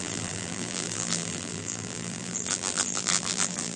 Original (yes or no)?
no